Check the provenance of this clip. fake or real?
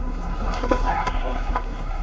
fake